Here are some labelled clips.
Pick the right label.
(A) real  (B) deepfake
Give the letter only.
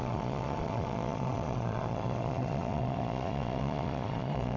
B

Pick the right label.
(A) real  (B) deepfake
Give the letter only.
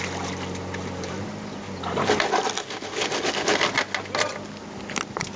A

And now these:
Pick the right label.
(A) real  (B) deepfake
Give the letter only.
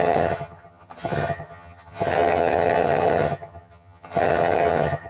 B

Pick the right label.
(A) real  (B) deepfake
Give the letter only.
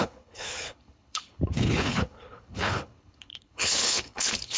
B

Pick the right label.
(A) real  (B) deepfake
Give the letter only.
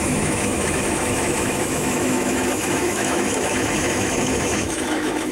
B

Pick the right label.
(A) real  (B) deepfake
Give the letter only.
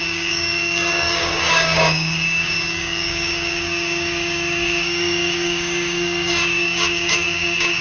B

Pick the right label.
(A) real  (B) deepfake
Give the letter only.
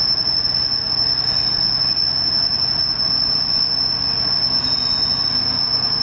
A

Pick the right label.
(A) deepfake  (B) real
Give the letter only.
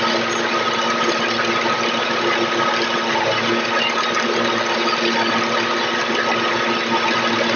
B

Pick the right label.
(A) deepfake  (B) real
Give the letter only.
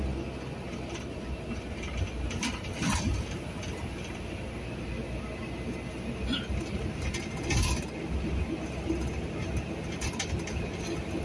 B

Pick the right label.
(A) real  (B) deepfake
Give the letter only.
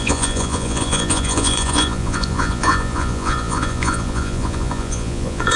B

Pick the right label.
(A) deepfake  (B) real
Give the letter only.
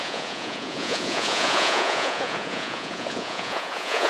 A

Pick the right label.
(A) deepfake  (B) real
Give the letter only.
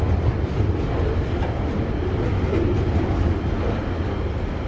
B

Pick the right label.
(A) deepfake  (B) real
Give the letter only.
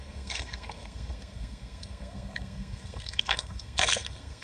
A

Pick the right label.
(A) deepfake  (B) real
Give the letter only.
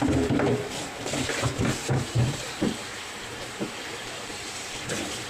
A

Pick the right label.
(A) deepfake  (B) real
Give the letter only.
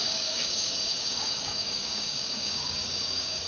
A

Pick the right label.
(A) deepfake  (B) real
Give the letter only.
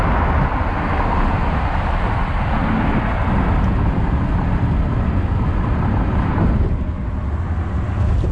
B